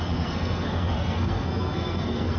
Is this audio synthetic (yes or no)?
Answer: yes